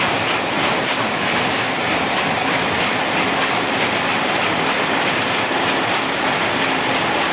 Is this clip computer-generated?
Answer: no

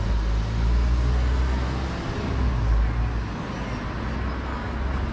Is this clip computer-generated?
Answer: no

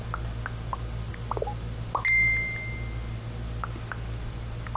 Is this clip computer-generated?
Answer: no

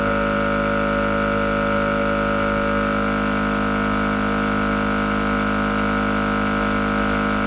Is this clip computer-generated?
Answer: no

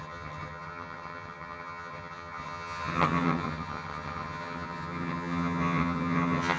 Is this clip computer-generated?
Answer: yes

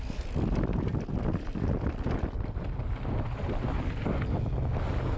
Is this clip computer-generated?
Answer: no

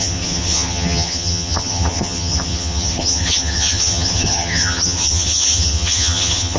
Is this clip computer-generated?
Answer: yes